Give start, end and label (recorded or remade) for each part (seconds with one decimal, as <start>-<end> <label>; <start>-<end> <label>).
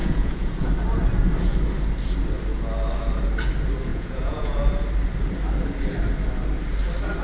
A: 0.0-0.7 remade; 0.7-3.9 recorded; 3.9-4.6 remade; 4.6-7.2 recorded